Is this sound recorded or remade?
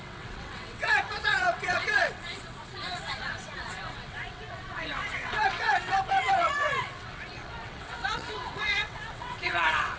remade